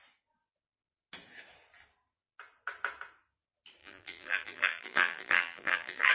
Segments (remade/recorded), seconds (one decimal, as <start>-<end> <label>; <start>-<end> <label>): 0.0-3.8 recorded; 3.8-6.1 remade